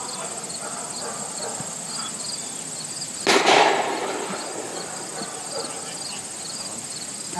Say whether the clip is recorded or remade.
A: recorded